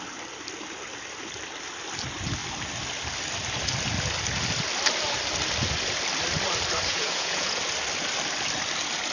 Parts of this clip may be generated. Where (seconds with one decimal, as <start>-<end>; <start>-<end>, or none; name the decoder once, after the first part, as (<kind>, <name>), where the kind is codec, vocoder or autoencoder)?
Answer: 6.9-7.6 (vocoder, Vocos)